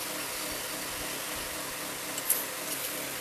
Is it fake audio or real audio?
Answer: real